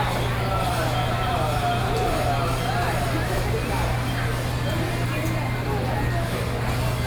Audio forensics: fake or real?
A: real